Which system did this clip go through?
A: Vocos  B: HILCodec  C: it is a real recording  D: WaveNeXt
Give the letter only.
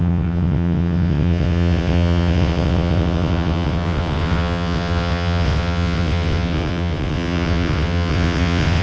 D